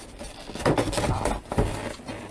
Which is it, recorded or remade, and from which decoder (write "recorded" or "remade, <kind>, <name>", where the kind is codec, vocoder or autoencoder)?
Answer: recorded